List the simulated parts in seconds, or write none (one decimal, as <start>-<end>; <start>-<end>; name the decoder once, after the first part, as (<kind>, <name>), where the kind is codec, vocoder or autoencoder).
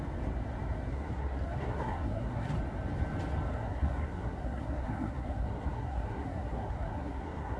0.9-2.5 (codec, SNAC); 3.5-7.6